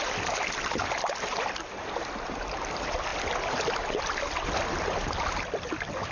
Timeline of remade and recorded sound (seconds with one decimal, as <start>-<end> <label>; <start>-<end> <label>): 0.0-6.1 recorded